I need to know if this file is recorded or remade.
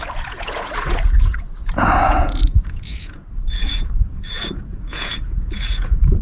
remade